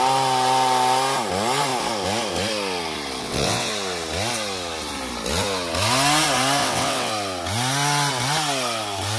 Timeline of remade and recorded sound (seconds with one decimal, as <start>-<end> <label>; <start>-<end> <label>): 0.0-3.2 recorded; 3.2-3.7 remade; 3.7-6.6 recorded; 6.6-7.1 remade; 7.1-9.2 recorded